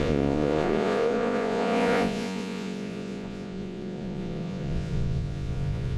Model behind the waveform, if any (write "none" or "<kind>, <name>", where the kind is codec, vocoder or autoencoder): vocoder, Vocos